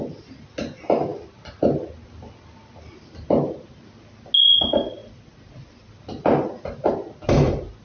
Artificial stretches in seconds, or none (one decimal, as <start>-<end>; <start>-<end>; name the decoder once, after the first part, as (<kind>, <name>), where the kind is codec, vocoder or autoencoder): none